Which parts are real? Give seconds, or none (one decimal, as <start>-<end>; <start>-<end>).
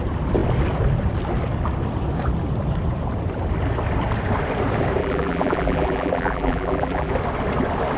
0.0-5.0; 7.1-8.0